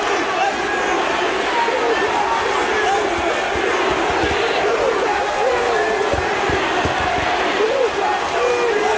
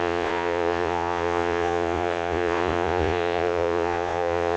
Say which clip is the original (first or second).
first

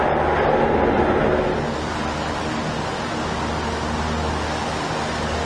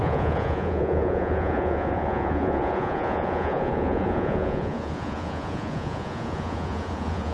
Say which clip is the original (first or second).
first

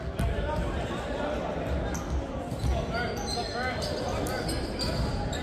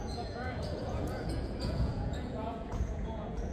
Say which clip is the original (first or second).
first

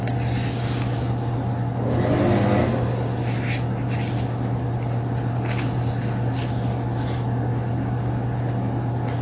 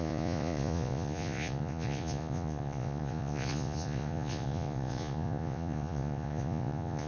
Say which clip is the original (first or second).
first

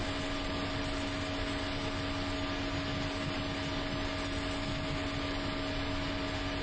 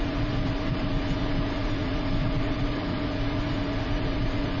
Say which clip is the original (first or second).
first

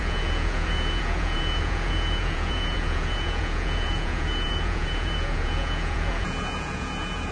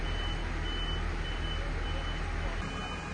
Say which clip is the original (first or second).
second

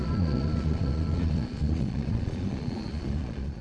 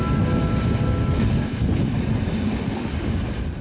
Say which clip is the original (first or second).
second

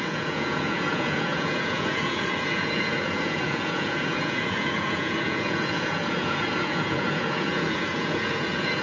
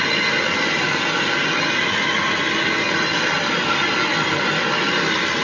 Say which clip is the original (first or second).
second